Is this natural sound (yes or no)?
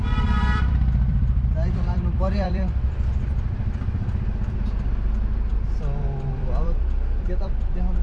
no